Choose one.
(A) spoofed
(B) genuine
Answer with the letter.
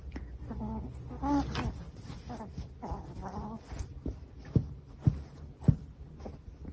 B